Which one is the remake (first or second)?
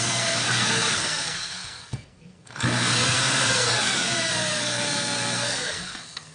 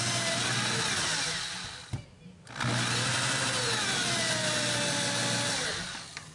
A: first